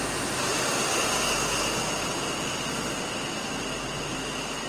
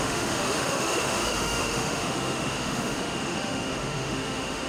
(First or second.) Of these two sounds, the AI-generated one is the second